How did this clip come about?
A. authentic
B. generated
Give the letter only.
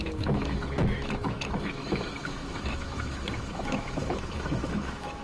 B